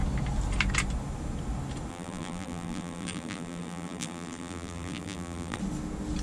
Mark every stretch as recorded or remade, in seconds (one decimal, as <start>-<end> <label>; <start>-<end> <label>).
0.0-1.9 recorded; 1.9-5.6 remade; 5.6-6.2 recorded